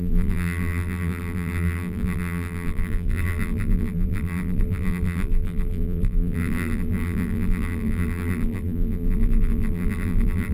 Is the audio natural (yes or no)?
no